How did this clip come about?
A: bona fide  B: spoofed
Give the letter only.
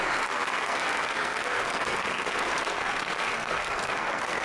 B